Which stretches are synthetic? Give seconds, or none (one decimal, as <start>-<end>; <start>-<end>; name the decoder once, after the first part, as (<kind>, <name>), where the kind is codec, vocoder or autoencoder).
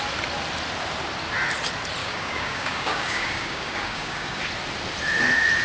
2.0-4.4 (codec, DAC)